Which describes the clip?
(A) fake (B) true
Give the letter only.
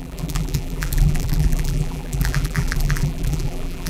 A